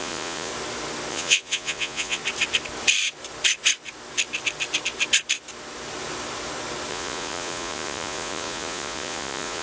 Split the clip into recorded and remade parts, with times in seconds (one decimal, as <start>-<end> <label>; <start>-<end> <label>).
0.0-0.5 remade; 0.5-1.1 recorded; 1.1-2.2 remade; 2.2-6.9 recorded; 6.9-9.6 remade